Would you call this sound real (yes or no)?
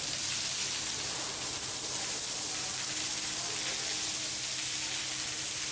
yes